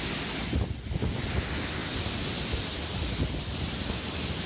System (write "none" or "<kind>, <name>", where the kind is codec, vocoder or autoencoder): none